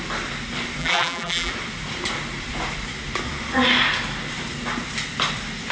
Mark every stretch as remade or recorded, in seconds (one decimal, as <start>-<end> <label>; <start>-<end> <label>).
0.0-0.8 recorded; 0.8-1.5 remade; 1.5-5.7 recorded